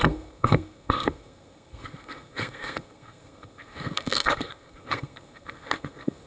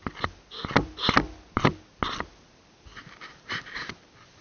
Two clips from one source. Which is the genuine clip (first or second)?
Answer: second